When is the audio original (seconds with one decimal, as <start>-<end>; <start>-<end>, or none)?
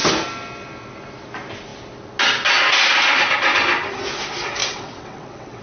0.0-4.6